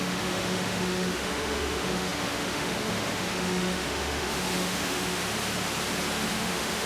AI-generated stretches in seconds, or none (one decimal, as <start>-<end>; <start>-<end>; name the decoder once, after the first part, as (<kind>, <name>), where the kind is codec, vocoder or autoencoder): 0.0-5.2 (autoencoder, DAC-VAE); 6.3-6.9